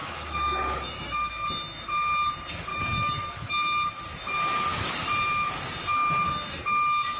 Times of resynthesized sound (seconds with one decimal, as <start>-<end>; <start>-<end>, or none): 0.0-1.3; 2.7-3.5